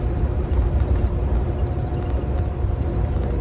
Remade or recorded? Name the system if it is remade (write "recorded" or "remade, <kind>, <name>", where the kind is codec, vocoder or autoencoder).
recorded